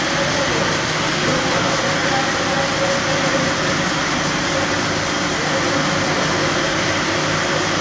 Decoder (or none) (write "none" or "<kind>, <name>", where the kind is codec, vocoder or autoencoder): none